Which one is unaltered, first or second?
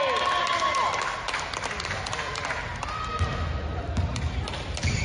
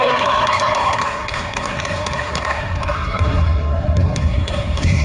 first